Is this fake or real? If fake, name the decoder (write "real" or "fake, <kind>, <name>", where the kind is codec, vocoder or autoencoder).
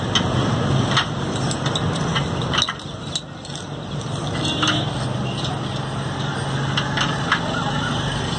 real